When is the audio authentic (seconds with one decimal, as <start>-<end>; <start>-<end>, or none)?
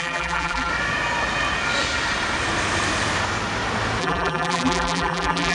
0.7-4.0